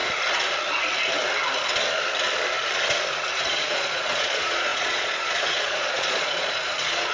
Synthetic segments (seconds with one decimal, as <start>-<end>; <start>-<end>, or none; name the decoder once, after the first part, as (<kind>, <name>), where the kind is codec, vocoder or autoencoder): 3.4-7.1 (vocoder, Vocos)